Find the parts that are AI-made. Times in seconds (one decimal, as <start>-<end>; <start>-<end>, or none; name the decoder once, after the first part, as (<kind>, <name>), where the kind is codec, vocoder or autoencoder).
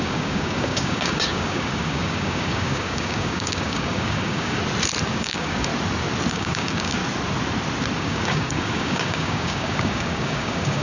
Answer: 0.0-4.6 (codec, DAC); 5.1-5.7; 6.3-7.0; 8.0-10.8